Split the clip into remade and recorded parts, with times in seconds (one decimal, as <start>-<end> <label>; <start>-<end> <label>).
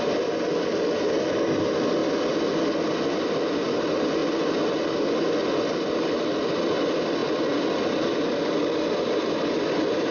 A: 0.0-10.1 recorded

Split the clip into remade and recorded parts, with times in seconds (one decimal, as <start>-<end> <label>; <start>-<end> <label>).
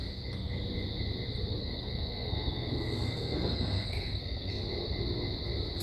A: 0.0-1.6 recorded; 1.6-4.5 remade; 4.5-5.8 recorded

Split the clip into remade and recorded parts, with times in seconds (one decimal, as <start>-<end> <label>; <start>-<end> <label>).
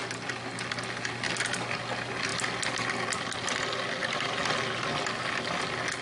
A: 0.0-6.0 recorded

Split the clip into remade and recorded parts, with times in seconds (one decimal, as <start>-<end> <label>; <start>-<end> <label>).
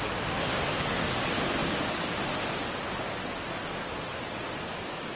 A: 0.0-5.2 recorded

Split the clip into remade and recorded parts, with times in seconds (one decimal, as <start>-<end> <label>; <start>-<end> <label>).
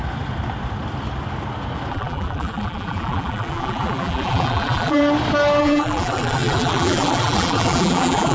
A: 0.0-1.9 recorded; 1.9-5.0 remade; 5.0-5.6 recorded; 5.6-8.3 remade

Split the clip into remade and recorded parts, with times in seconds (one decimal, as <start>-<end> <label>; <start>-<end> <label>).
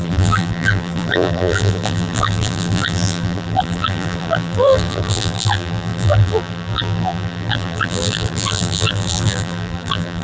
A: 0.0-10.2 remade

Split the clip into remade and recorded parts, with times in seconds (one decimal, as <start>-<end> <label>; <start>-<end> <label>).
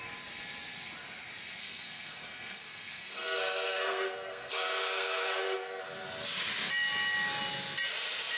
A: 0.0-1.6 recorded; 1.6-5.8 remade; 5.8-8.4 recorded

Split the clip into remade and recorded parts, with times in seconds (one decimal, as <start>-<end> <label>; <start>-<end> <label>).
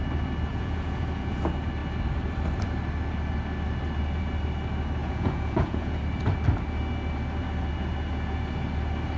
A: 0.0-0.5 recorded; 0.5-1.4 remade; 1.4-5.0 recorded; 5.0-6.0 remade; 6.0-9.2 recorded